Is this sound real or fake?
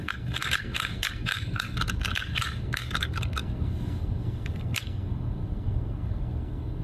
fake